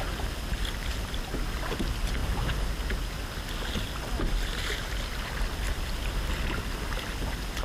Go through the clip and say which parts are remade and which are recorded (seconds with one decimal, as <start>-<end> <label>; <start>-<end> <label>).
0.0-7.6 recorded